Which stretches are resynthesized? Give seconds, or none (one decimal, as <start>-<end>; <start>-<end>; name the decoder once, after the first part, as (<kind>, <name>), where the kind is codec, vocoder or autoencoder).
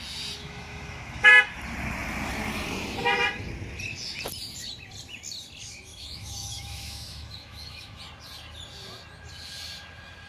0.4-1.3 (autoencoder, DAC-VAE); 5.9-8.0